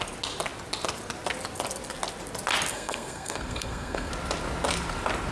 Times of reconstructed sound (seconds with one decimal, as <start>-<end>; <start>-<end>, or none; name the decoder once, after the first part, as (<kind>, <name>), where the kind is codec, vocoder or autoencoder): 2.7-4.1 (codec, SNAC)